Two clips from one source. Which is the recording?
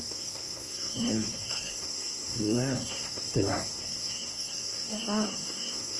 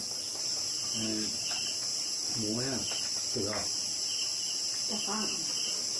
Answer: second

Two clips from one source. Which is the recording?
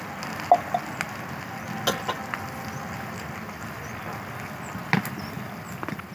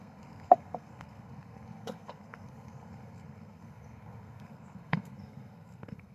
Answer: first